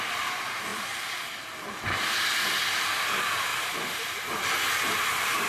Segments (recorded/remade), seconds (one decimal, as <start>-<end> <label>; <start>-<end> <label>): 0.0-5.5 recorded